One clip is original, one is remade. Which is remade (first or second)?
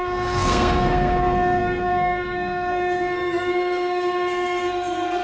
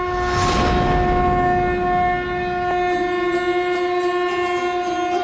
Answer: first